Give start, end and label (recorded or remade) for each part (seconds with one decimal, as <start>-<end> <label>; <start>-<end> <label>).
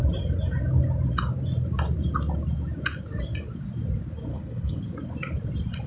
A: 0.0-4.3 recorded; 4.3-4.8 remade; 4.8-5.9 recorded